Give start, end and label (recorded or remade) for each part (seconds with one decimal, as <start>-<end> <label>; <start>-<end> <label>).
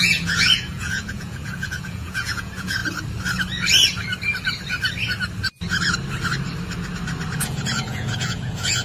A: 0.0-2.8 remade; 2.8-7.4 recorded; 7.4-8.8 remade